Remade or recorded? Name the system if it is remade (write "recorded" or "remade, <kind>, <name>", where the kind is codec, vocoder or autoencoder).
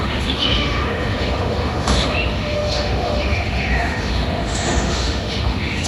remade, autoencoder, DAC-VAE